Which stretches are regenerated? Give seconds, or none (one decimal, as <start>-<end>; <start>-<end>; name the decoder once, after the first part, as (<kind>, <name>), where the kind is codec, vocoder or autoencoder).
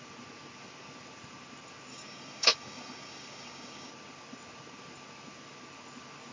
1.9-3.9 (codec, DAC)